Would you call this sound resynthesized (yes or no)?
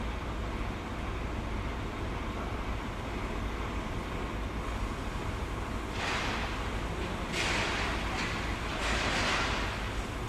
no